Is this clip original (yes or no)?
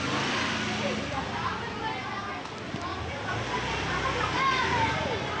yes